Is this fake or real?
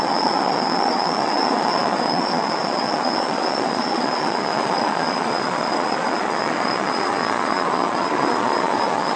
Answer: fake